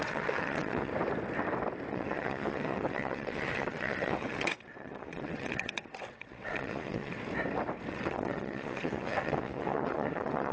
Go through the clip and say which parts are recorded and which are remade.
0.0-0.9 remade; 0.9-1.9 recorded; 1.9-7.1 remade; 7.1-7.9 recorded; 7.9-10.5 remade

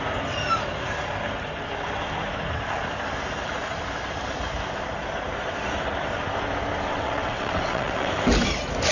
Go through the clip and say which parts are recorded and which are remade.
0.0-6.9 recorded; 6.9-8.1 remade; 8.1-8.9 recorded

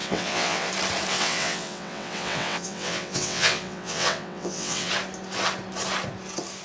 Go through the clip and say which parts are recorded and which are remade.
0.0-0.7 remade; 0.7-1.1 recorded; 1.1-4.9 remade; 4.9-6.6 recorded

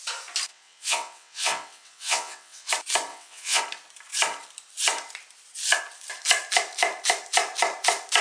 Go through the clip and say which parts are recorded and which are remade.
0.0-0.5 recorded; 0.5-2.7 remade; 2.7-3.1 recorded; 3.1-3.6 remade; 3.6-8.2 recorded

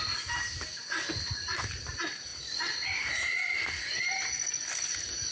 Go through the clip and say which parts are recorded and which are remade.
0.0-5.3 recorded

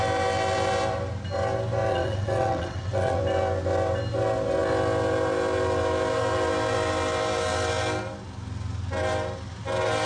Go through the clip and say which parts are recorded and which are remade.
0.0-1.9 recorded; 1.9-3.2 remade; 3.2-10.1 recorded

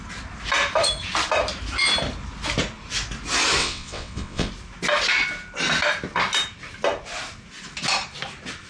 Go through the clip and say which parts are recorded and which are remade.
0.0-3.6 recorded; 3.6-4.5 remade; 4.5-8.7 recorded